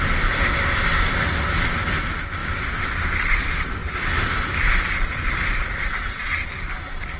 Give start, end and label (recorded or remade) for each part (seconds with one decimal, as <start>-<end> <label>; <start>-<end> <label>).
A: 0.0-7.2 recorded